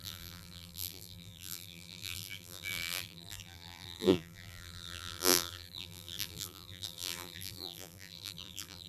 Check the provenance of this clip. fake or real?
fake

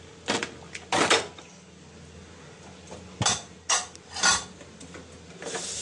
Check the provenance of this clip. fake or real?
fake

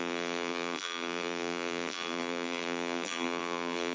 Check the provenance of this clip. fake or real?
fake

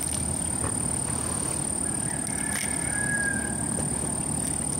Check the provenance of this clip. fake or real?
real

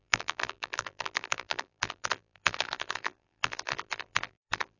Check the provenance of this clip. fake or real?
fake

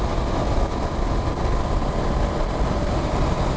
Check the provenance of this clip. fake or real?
real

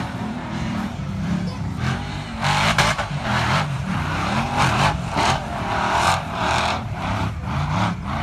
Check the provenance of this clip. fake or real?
fake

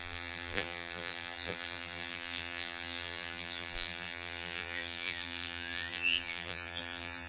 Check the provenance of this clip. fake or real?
fake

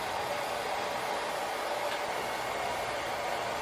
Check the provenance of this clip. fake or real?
real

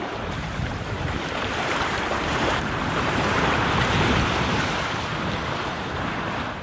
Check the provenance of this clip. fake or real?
fake